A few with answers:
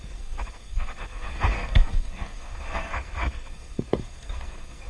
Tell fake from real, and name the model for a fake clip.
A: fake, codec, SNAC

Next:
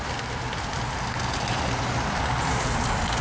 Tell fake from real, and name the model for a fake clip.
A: real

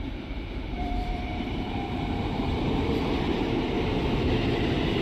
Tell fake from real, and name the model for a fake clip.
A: fake, vocoder, BigVGAN v2